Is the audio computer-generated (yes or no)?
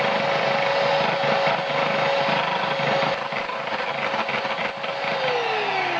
no